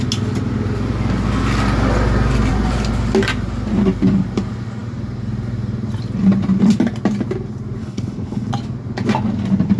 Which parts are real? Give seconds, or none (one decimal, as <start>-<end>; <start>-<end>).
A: 0.0-7.8; 8.5-9.8